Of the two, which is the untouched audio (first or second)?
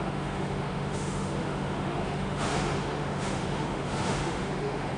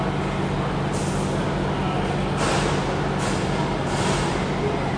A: second